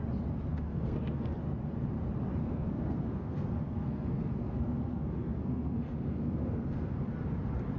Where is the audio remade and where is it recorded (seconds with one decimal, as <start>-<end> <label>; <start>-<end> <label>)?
0.0-0.5 recorded; 0.5-1.4 remade; 1.4-2.4 recorded; 2.4-7.1 remade; 7.1-7.8 recorded